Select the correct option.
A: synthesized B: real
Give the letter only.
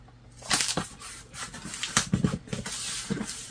B